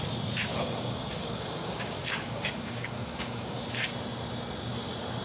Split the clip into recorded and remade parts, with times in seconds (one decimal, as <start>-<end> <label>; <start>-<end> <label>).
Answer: 0.0-0.5 recorded; 0.5-3.6 remade; 3.6-5.2 recorded